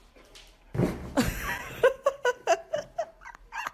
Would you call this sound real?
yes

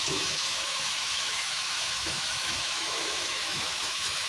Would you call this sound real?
no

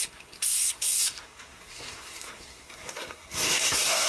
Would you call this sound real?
no